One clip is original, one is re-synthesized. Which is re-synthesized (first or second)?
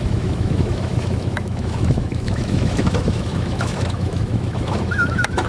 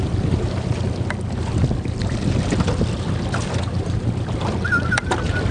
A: first